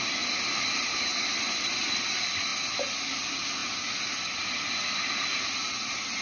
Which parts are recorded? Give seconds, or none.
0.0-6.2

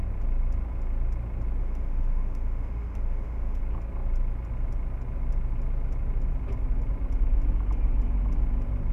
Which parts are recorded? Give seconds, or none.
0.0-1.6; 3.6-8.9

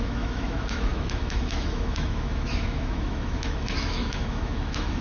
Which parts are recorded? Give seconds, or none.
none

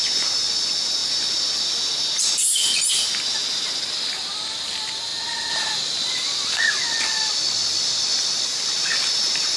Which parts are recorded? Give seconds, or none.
0.0-9.6

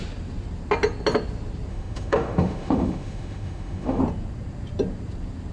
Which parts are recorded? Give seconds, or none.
0.0-1.7; 4.0-5.5

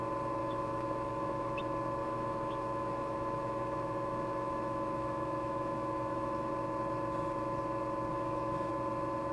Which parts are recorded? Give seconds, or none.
0.0-0.4; 1.6-2.0; 6.5-8.1; 8.7-9.3

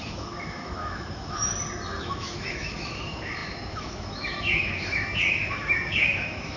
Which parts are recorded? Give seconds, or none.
1.4-2.0